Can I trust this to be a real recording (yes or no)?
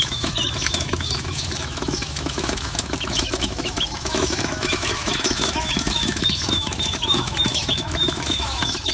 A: no